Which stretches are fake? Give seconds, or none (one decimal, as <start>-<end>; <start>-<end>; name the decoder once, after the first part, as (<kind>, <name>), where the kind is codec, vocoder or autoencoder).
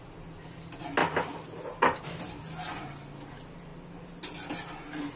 1.0-2.2 (vocoder, BigVGAN v2)